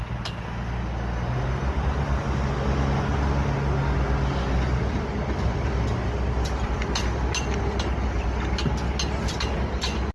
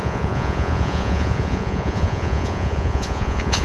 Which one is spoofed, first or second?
second